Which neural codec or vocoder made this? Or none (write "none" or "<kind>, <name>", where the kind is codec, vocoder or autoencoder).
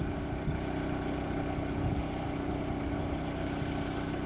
none